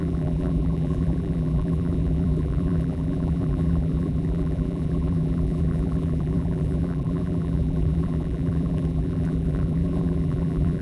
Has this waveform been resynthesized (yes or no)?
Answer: yes